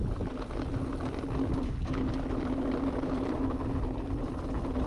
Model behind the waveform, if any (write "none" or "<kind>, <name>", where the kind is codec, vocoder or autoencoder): none